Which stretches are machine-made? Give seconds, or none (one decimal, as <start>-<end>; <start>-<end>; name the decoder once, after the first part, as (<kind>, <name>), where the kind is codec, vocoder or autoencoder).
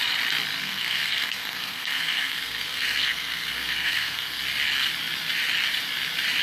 0.6-4.4 (codec, SNAC)